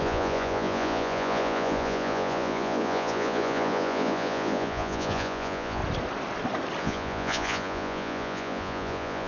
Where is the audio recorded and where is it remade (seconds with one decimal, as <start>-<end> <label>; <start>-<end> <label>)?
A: 0.0-5.8 remade; 5.8-6.8 recorded; 6.8-9.3 remade